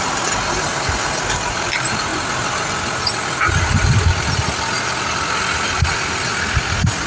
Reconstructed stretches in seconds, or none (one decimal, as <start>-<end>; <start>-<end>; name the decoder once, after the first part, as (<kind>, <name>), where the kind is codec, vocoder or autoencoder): none